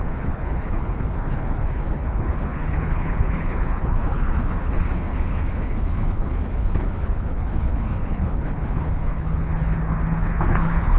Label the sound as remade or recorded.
remade